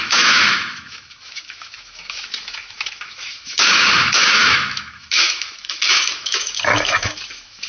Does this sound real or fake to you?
fake